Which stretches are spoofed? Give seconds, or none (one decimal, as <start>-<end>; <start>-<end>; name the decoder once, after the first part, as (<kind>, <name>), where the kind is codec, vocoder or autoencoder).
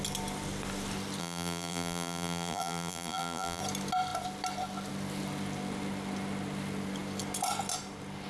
1.2-3.6 (vocoder, BigVGAN v2)